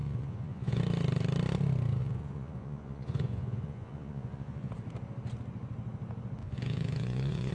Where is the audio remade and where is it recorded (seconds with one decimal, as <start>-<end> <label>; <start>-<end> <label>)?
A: 0.0-0.8 remade; 0.8-2.0 recorded; 2.0-4.7 remade; 4.7-6.4 recorded; 6.4-7.5 remade